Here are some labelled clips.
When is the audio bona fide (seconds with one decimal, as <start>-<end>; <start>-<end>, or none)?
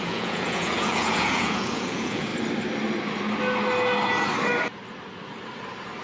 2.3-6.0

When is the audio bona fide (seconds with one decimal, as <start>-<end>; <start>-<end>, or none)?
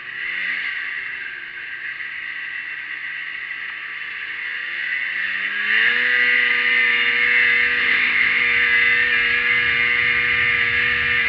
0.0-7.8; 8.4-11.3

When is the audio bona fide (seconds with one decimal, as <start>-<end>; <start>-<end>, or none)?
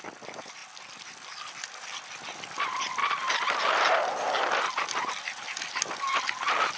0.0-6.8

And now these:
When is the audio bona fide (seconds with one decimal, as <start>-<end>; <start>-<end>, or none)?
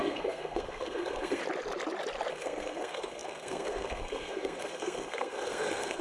1.4-2.3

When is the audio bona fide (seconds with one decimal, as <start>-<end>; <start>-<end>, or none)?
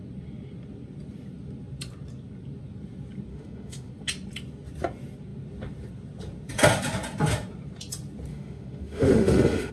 0.0-3.3; 3.9-8.3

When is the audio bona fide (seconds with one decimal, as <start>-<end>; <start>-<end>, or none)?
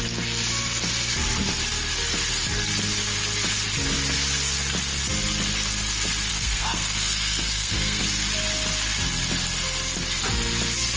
0.0-6.3; 8.0-11.0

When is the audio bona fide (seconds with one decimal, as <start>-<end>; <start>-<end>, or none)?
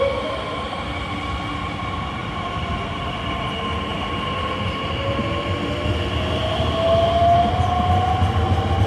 0.0-2.2; 3.2-8.9